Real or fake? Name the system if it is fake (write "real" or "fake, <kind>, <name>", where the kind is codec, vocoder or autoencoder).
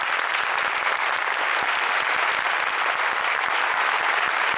real